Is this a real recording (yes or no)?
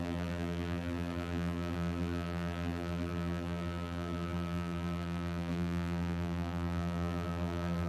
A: no